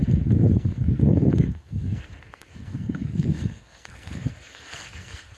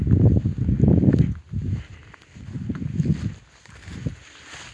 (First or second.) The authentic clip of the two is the second